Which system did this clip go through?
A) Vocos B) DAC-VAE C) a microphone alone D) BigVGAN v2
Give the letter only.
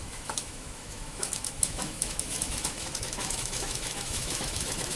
B